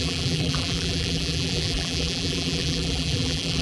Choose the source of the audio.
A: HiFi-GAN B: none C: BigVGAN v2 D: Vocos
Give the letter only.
C